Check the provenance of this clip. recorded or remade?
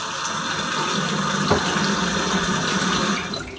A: recorded